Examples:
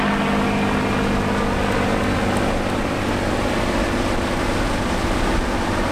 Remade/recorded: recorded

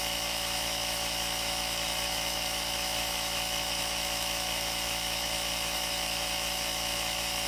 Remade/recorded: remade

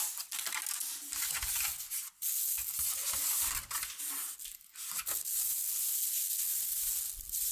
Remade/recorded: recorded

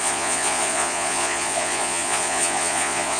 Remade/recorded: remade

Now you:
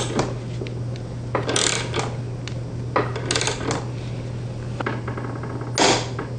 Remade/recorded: recorded